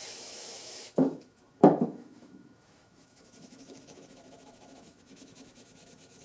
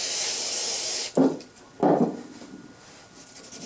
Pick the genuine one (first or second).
second